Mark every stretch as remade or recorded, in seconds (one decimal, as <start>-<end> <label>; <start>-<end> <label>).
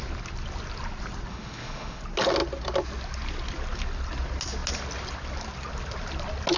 0.0-1.3 recorded; 1.3-2.0 remade; 2.0-6.6 recorded